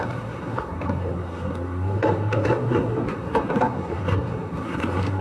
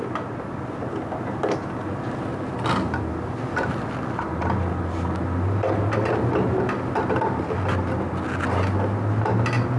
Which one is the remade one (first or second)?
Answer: first